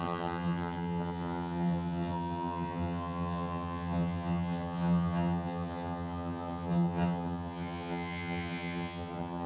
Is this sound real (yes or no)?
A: no